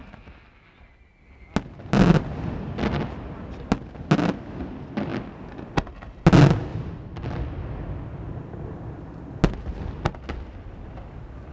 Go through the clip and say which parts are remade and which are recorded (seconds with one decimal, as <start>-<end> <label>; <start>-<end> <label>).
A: 0.0-11.5 recorded